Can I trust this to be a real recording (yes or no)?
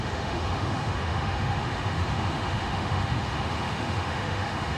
no